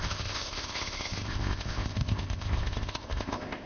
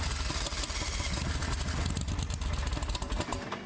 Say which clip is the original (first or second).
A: second